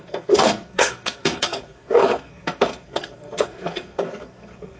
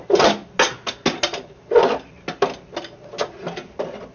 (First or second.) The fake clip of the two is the first